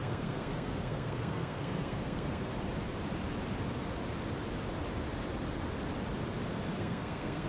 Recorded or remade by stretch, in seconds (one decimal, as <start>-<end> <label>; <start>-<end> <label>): 0.0-2.5 remade; 2.5-6.8 recorded; 6.8-7.5 remade